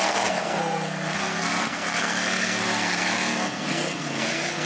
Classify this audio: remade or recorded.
remade